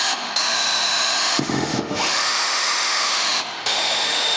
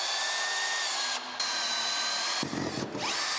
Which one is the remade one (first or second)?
first